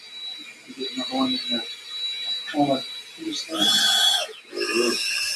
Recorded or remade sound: recorded